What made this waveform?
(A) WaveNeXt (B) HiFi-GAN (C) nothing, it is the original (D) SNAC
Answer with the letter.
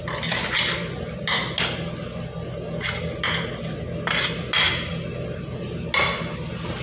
C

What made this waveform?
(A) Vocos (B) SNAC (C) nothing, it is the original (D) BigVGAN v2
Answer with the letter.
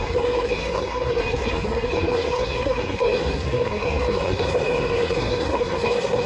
B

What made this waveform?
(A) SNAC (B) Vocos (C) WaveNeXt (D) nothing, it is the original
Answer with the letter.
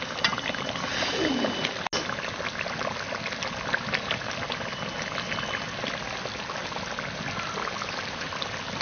D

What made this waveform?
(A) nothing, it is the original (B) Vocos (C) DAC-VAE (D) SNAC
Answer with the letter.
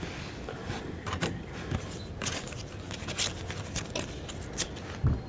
A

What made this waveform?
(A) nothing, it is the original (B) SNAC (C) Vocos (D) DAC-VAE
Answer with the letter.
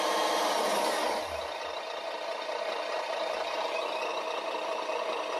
A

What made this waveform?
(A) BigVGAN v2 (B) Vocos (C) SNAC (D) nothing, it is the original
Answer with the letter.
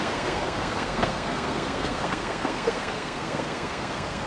C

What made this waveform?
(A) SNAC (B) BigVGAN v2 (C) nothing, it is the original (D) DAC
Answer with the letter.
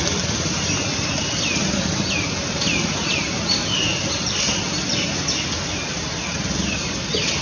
C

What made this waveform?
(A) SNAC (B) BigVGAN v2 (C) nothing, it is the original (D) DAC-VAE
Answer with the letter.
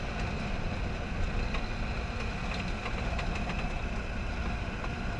C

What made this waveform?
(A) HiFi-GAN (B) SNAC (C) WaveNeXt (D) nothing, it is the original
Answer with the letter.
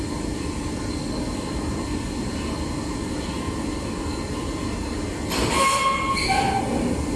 D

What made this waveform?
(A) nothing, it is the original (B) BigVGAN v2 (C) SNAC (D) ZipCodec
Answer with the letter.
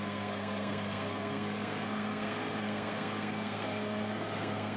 C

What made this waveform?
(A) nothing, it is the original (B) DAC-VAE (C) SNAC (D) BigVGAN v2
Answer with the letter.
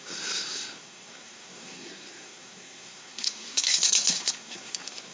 C